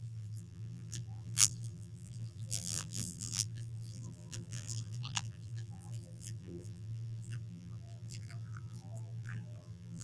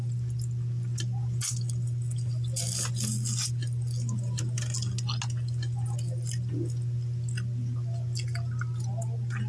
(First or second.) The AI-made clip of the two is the first